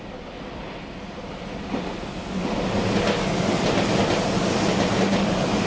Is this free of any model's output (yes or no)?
yes